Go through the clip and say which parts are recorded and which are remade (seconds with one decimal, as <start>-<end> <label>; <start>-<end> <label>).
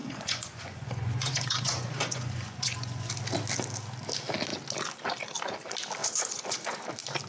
0.0-3.1 remade; 3.1-6.0 recorded; 6.0-6.8 remade; 6.8-7.3 recorded